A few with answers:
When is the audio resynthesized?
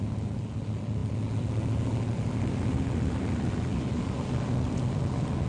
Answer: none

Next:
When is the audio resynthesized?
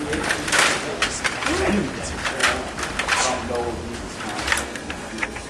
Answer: 4.6-5.5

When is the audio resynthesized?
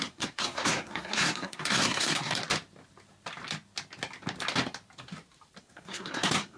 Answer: 0.0-2.4; 5.6-6.6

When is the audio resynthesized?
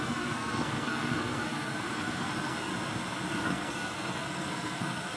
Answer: 0.0-2.7; 3.3-5.2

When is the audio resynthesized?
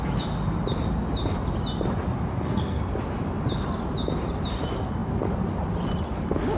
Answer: 2.3-2.8